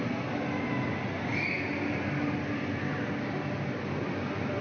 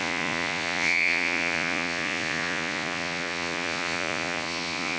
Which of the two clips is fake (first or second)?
second